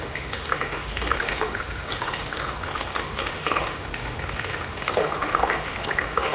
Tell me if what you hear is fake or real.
fake